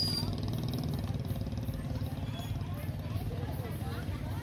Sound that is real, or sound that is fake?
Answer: real